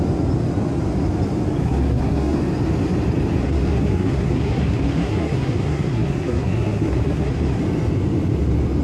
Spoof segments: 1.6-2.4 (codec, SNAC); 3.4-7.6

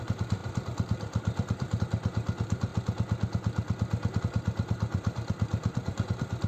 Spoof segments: 0.0-2.7 (vocoder, BigVGAN v2); 4.2-6.5